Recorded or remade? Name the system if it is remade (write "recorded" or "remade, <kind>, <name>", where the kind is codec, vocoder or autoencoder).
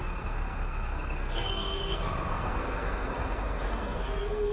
remade, codec, SNAC